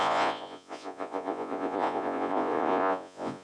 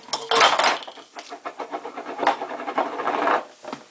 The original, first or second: second